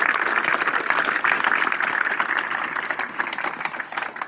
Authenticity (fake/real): real